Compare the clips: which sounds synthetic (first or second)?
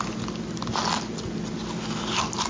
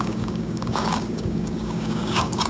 second